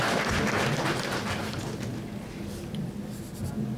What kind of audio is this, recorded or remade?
recorded